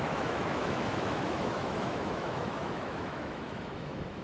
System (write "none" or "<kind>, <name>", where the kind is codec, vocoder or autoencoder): autoencoder, DAC-VAE